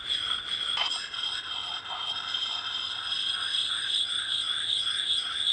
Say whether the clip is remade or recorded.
recorded